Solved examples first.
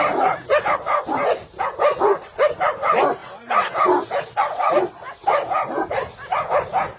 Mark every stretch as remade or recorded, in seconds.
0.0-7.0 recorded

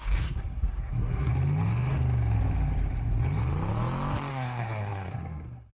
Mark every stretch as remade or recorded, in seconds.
0.0-1.3 remade; 1.3-4.3 recorded; 4.3-5.7 remade

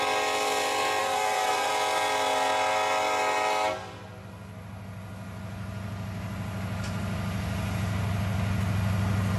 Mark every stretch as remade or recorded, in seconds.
0.0-1.0 recorded; 1.0-1.7 remade; 1.7-9.4 recorded

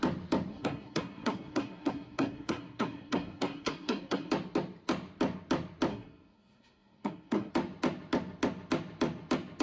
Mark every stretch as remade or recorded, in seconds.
0.0-0.5 recorded; 0.5-4.3 remade; 4.3-5.9 recorded; 5.9-7.5 remade; 7.5-9.6 recorded

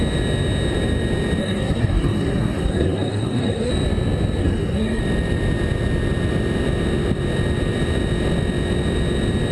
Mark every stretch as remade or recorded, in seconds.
0.0-1.4 recorded; 1.4-3.7 remade; 3.7-4.4 recorded; 4.4-5.0 remade; 5.0-9.5 recorded